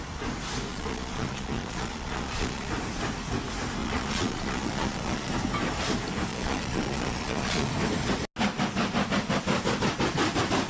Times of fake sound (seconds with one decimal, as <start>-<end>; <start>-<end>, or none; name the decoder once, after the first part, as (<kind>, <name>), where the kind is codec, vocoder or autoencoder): 0.7-2.7 (vocoder, Vocos); 3.8-5.3; 6.3-7.7